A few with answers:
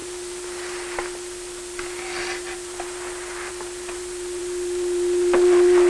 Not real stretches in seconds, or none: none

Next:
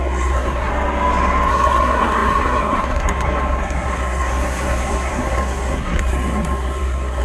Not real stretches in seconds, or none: 0.0-0.7 (codec, SNAC); 1.5-7.2

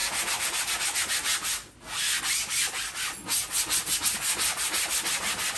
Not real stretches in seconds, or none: none

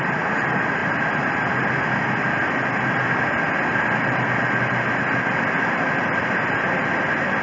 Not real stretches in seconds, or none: none

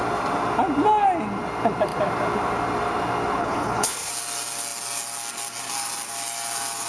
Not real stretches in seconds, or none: 3.4-4.1 (codec, HILCodec)